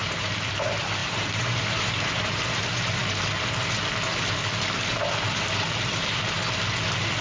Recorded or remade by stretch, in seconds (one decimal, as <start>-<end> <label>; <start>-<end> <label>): 0.0-0.5 remade; 0.5-1.0 recorded; 1.0-2.5 remade; 2.5-7.2 recorded